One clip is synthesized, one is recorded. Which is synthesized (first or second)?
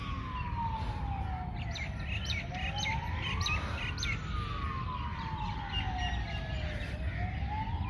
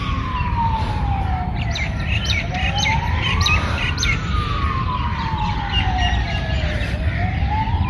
second